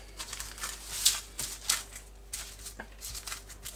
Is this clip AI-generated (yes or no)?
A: no